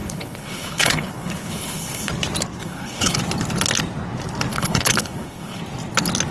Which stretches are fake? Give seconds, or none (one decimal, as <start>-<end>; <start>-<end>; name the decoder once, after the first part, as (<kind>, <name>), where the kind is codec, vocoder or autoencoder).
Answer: 0.0-2.1 (codec, HILCodec); 2.6-3.2; 4.5-5.6